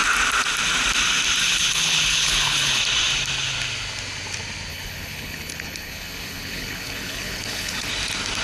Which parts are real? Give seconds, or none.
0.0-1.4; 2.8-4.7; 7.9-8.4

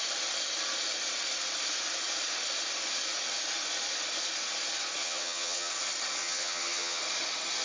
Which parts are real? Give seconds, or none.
0.0-5.0; 5.7-6.2; 7.0-7.6

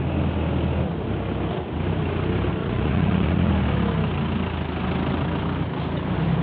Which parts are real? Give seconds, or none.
0.0-2.6; 3.5-6.4

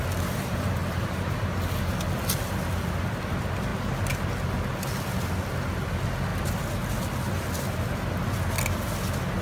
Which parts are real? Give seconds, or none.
0.0-6.3; 7.8-9.4